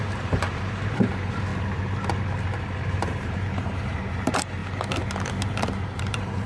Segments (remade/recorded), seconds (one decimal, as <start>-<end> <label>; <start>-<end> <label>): 0.0-1.5 remade; 1.5-2.9 recorded; 2.9-4.6 remade; 4.6-6.0 recorded; 6.0-6.5 remade